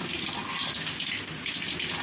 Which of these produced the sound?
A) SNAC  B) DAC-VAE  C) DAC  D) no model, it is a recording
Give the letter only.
D